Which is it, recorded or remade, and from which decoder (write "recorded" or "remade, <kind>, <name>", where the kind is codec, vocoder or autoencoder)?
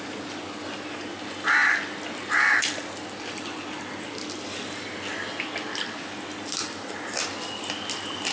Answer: recorded